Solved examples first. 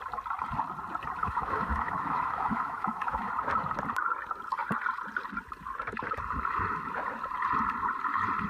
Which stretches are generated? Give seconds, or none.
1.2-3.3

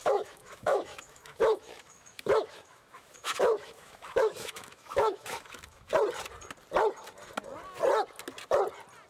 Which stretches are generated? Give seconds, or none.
0.0-5.9

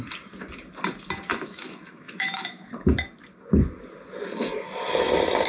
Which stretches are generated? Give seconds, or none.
1.3-2.7

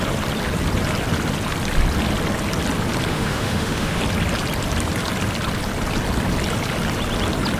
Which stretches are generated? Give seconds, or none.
3.1-4.0

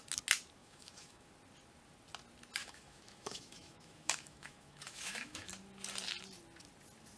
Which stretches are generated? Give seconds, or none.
0.6-1.3; 2.6-5.5

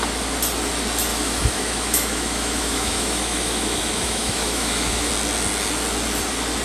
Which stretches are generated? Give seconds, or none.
1.1-5.1

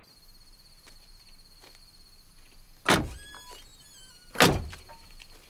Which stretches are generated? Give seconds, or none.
none

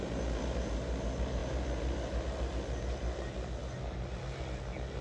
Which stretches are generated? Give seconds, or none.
none